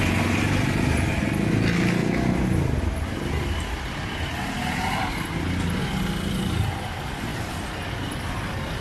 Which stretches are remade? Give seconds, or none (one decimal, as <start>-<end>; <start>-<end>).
none